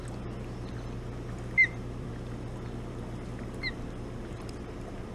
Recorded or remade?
recorded